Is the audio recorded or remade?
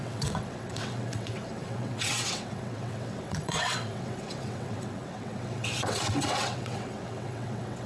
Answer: remade